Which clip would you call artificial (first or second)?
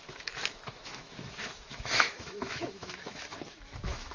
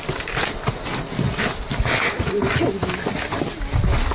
first